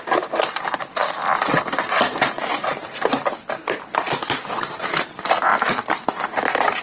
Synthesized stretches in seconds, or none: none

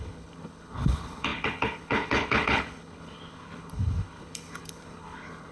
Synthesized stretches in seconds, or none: 0.0-5.5 (codec, HILCodec)

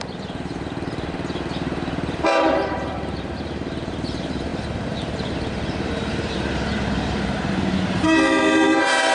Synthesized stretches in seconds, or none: 0.0-9.1 (vocoder, BigVGAN v2)

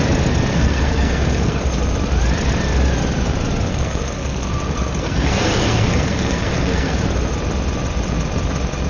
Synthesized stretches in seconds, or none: 0.5-1.6 (codec, SNAC); 3.7-7.0

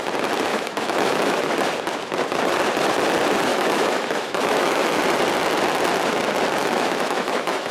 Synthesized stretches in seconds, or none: 0.5-1.4 (autoencoder, DAC-VAE); 3.5-5.0; 6.6-7.7

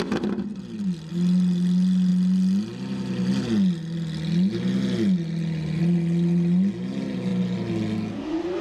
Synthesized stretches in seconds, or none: none

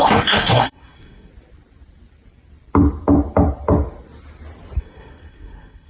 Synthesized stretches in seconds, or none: 0.0-1.3 (codec, SNAC); 4.8-5.9